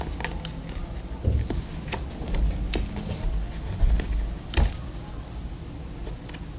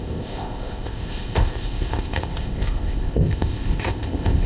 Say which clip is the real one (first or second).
first